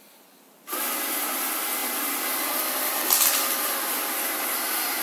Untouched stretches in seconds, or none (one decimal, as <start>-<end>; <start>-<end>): 0.0-5.0